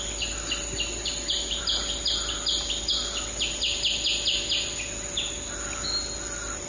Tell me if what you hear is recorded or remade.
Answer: recorded